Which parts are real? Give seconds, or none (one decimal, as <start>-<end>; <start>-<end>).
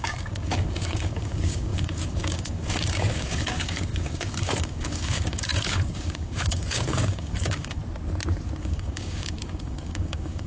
7.8-8.6